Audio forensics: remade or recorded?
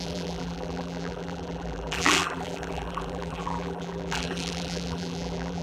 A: remade